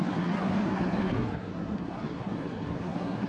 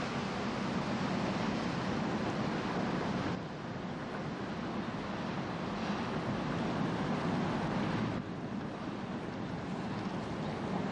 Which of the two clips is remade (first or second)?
first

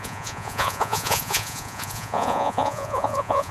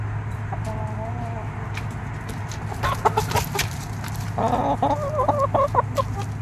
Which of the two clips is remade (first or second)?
first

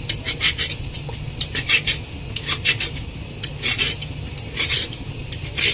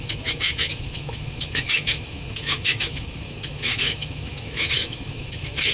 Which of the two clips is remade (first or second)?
second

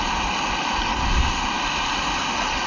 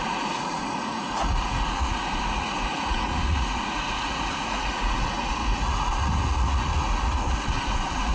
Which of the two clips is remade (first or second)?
second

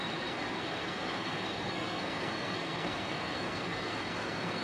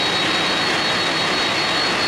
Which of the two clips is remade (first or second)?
first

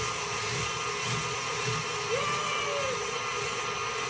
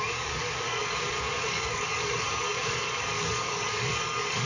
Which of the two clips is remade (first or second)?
second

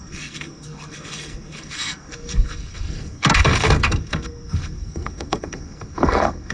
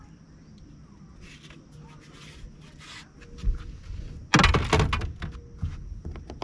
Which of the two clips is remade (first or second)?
first